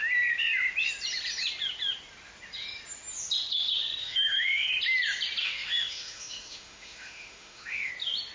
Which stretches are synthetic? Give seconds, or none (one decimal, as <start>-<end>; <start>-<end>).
4.0-4.7; 5.4-7.9